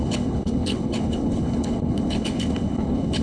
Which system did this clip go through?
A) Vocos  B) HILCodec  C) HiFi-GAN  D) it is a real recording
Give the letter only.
B